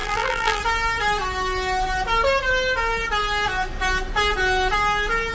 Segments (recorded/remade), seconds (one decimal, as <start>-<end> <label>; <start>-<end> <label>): 0.0-0.6 remade; 0.6-5.3 recorded